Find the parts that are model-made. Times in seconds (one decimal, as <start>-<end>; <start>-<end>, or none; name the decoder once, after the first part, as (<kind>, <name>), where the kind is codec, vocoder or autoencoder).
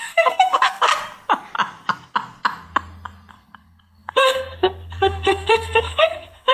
0.0-0.9 (codec, SNAC); 3.3-6.5